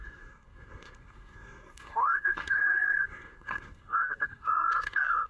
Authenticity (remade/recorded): remade